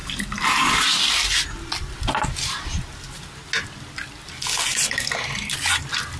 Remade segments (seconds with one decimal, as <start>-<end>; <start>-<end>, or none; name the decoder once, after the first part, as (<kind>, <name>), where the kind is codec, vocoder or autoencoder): none